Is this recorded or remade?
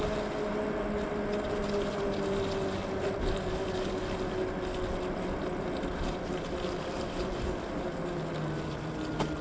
recorded